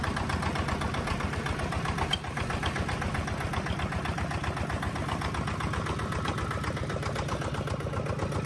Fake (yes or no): no